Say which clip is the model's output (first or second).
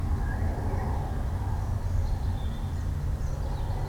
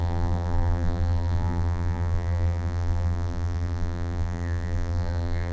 second